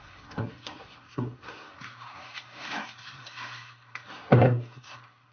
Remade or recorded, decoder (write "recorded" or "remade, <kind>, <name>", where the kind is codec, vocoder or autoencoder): remade, codec, SNAC